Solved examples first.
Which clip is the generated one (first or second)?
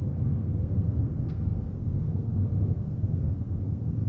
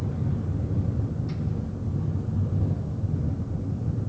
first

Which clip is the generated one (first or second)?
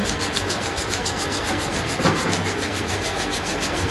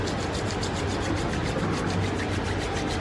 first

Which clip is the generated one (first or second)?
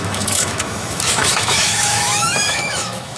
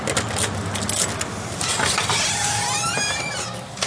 first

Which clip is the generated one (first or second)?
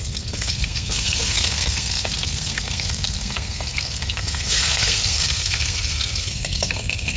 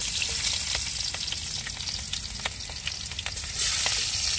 first